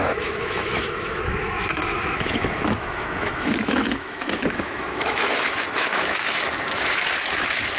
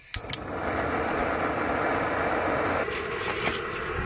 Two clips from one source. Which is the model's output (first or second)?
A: first